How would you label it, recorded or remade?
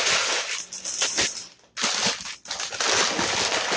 recorded